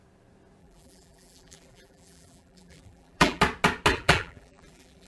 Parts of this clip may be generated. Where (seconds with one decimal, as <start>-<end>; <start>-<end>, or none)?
0.6-3.4; 3.9-5.1